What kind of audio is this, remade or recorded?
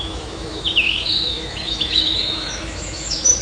remade